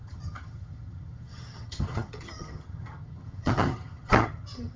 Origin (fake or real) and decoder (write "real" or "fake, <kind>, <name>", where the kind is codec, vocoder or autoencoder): fake, vocoder, HiFi-GAN